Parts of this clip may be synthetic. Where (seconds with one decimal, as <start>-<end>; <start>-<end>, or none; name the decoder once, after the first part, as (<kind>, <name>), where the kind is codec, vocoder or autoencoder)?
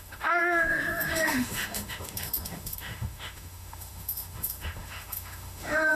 0.0-5.9 (autoencoder, DAC-VAE)